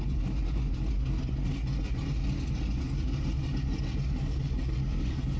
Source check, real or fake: real